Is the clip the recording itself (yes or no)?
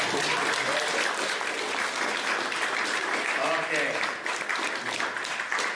yes